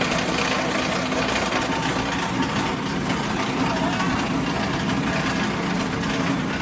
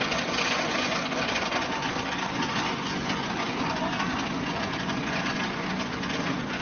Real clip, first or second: first